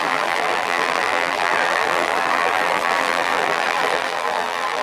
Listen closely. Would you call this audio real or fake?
fake